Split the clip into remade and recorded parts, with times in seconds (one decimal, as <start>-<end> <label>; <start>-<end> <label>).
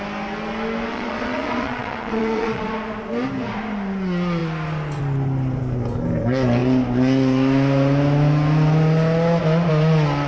0.0-0.9 recorded; 0.9-2.6 remade; 2.6-10.3 recorded